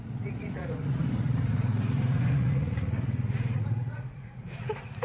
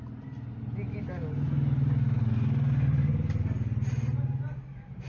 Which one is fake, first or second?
first